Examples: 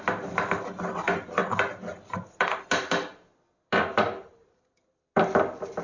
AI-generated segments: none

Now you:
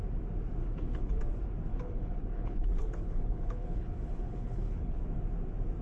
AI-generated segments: 0.6-1.2 (codec, HILCodec); 1.7-5.0

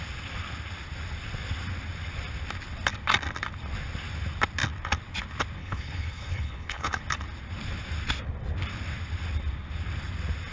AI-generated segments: 5.6-7.0 (codec, HILCodec)

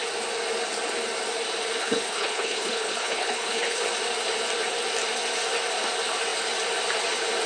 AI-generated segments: 1.8-3.8 (codec, HILCodec)